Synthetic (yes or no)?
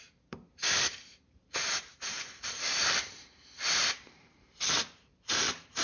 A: yes